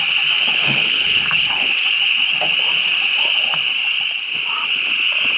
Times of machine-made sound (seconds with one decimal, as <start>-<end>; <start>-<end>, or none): 0.5-1.7